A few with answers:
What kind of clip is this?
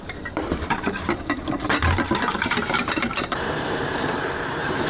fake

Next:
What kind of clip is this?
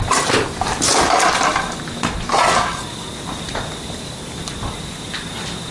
real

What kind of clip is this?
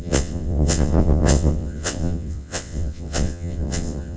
fake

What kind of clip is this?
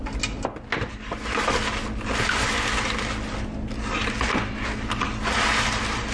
real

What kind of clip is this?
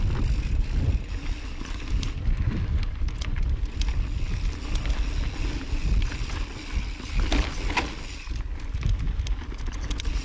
real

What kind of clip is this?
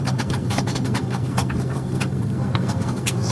fake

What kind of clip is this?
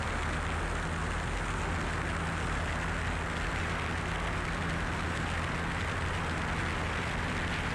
real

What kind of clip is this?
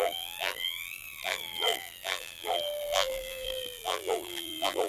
fake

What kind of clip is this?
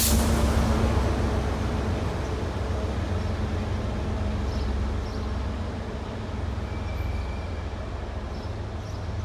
real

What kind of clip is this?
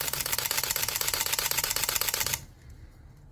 real